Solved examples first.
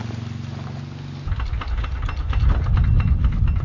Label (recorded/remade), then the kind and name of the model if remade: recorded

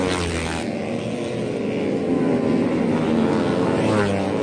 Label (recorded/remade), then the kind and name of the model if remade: recorded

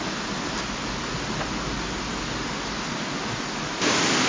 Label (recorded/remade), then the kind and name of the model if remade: recorded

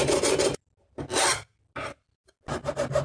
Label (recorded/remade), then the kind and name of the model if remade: recorded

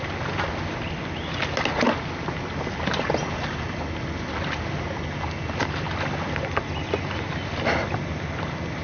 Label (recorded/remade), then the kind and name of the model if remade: recorded